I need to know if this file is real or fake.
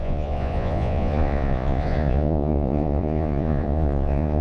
fake